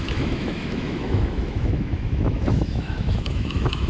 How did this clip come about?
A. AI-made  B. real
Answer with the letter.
A